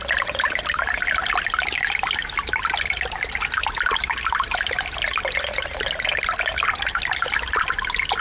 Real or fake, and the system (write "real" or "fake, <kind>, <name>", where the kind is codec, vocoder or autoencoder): real